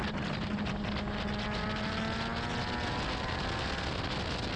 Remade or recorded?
recorded